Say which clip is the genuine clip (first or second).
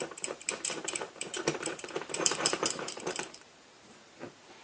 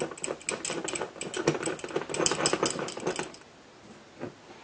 second